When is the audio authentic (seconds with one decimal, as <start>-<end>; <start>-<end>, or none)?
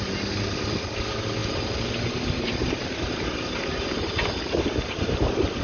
0.0-1.4; 4.6-5.6